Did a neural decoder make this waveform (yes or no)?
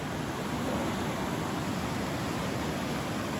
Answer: no